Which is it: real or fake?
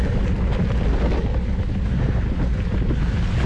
real